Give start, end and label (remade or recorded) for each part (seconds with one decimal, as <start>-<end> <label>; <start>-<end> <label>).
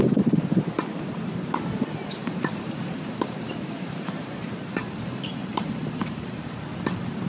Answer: 0.0-2.2 recorded; 2.2-6.6 remade; 6.6-7.3 recorded